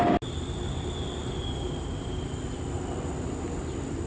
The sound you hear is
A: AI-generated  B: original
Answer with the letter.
B